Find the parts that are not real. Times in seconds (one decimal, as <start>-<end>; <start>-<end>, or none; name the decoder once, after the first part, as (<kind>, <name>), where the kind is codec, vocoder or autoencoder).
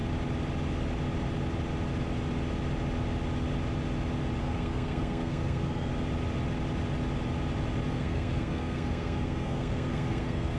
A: 4.4-5.9 (codec, SNAC); 7.9-10.6